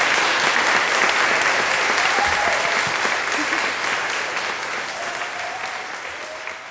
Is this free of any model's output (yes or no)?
yes